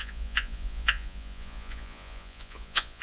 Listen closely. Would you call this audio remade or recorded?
remade